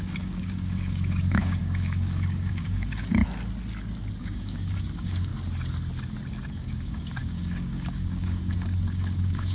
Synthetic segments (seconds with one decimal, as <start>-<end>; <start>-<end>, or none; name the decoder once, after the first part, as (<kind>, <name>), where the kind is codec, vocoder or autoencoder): 0.0-3.2 (codec, DAC); 4.2-5.3; 6.5-9.5